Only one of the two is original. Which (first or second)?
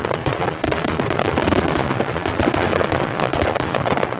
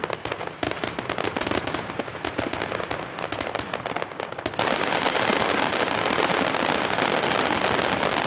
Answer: second